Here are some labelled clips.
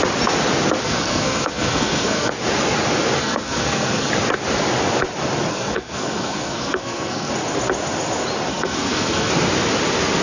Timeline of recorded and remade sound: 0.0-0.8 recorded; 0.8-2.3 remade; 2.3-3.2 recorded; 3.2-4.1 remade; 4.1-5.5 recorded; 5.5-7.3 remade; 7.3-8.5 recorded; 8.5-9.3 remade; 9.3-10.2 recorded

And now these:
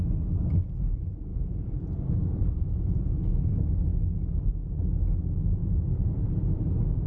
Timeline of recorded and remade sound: 0.0-1.3 recorded; 1.3-3.0 remade; 3.0-5.6 recorded; 5.6-7.1 remade

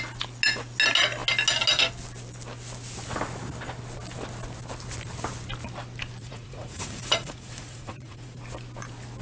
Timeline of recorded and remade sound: 0.0-6.2 recorded; 6.2-8.4 remade; 8.4-9.2 recorded

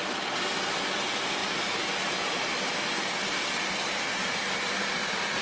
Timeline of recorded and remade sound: 0.0-1.4 recorded; 1.4-2.8 remade; 2.8-4.1 recorded; 4.1-4.9 remade; 4.9-5.4 recorded

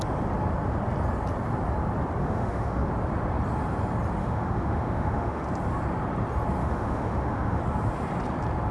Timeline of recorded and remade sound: 0.0-2.2 recorded; 2.2-2.9 remade; 2.9-4.2 recorded; 4.2-5.4 remade; 5.4-6.6 recorded; 6.6-7.6 remade; 7.6-8.7 recorded

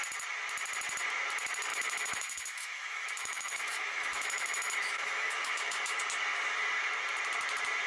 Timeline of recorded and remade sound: 0.0-1.7 recorded; 1.7-6.0 remade; 6.0-7.9 recorded